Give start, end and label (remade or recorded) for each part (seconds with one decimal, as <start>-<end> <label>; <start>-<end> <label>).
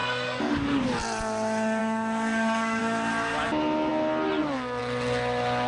0.0-0.8 remade; 0.8-1.8 recorded; 1.8-2.8 remade; 2.8-5.7 recorded